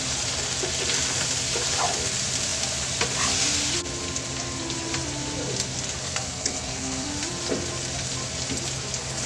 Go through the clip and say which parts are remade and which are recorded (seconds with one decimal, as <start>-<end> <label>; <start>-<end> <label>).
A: 0.0-6.0 recorded; 6.0-7.1 remade; 7.1-9.3 recorded